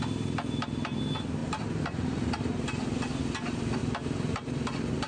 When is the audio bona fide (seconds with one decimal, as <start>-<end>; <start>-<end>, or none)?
0.0-1.4; 3.2-3.8